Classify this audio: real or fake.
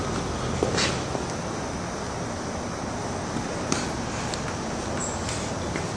real